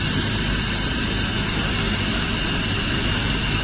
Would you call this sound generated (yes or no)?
no